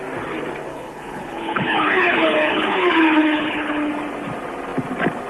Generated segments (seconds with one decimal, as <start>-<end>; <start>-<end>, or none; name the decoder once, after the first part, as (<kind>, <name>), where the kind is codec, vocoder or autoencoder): 0.7-3.9 (codec, HILCodec)

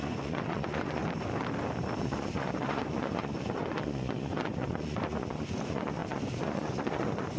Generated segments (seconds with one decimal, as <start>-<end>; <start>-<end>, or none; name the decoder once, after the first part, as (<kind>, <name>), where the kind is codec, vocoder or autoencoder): 0.0-1.0 (vocoder, Vocos); 2.0-7.4

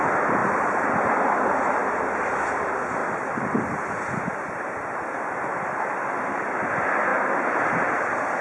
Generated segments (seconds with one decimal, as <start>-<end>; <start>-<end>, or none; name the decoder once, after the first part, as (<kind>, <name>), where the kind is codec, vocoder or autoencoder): 3.0-3.8 (vocoder, BigVGAN v2)

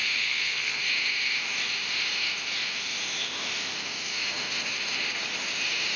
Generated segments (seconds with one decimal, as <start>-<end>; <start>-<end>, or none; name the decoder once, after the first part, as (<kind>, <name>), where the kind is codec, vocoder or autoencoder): 0.0-0.8 (codec, SNAC)

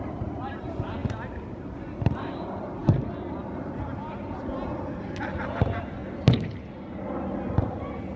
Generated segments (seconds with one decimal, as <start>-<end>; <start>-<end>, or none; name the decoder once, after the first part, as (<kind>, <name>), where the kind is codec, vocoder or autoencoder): none

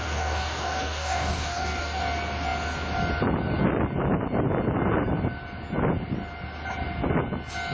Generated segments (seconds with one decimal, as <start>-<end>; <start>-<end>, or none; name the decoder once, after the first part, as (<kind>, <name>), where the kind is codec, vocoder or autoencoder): 0.0-2.0 (codec, DAC)

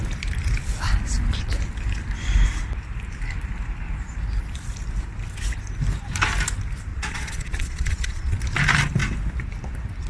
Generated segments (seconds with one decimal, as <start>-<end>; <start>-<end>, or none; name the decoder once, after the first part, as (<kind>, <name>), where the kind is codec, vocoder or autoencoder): 6.9-8.4 (vocoder, Vocos)

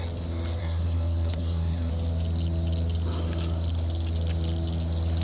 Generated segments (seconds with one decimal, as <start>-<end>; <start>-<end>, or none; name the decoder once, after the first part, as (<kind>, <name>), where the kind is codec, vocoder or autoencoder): 0.6-1.9 (codec, SNAC)